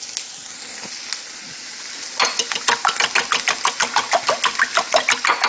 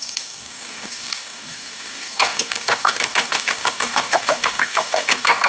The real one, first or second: first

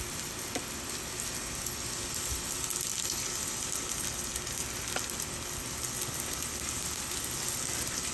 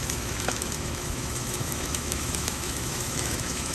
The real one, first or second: first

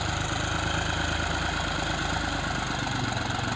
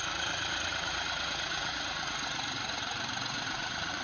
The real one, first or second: first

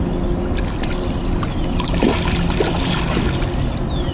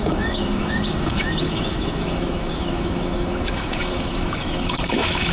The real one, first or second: first